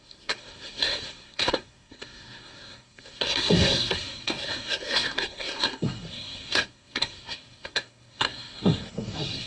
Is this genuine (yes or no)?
no